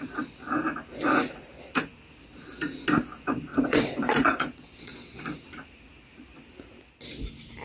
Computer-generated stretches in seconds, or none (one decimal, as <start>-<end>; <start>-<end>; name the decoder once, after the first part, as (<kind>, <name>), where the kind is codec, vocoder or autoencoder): 3.5-5.2 (vocoder, Vocos)